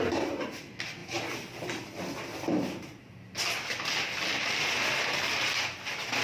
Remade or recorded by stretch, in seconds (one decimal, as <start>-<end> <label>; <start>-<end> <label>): 0.0-6.2 recorded